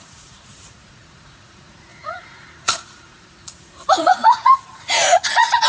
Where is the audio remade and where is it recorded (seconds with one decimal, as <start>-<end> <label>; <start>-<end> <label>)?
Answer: 0.0-5.7 remade